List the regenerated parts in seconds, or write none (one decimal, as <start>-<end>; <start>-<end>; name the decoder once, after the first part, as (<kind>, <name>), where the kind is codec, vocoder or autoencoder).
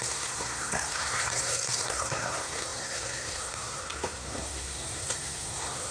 0.0-5.9 (codec, SNAC)